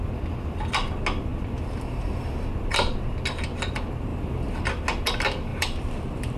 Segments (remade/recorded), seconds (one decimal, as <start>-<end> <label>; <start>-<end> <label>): 0.0-4.1 recorded; 4.1-4.7 remade; 4.7-5.5 recorded; 5.5-6.4 remade